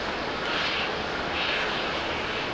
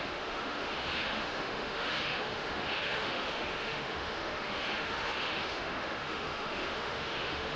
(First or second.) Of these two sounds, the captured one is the first